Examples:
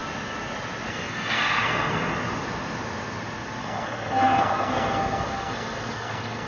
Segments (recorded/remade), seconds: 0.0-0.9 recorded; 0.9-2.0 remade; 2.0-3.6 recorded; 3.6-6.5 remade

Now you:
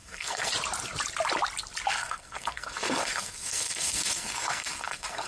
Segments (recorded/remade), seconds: 0.0-0.5 remade; 0.5-1.9 recorded; 1.9-5.3 remade

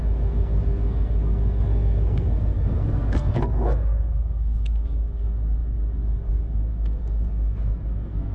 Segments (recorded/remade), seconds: 0.0-8.3 remade

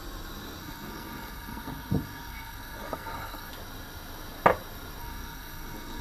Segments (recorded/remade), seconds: 0.0-0.6 recorded; 0.6-3.5 remade; 3.5-5.0 recorded; 5.0-6.0 remade

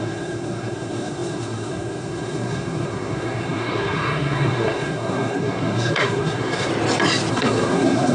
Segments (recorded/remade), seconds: 0.0-6.7 remade; 6.7-7.3 recorded; 7.3-8.1 remade

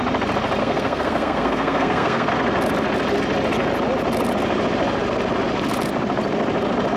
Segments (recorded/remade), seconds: 0.0-0.6 recorded; 0.6-2.3 remade; 2.3-7.0 recorded